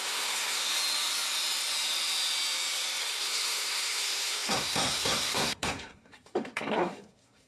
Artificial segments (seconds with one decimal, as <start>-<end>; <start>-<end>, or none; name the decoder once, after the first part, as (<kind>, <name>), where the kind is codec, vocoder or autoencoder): 0.0-0.7 (codec, SNAC); 3.0-7.5